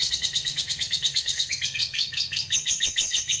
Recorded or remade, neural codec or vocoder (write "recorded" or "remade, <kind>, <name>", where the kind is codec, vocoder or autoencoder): remade, codec, SNAC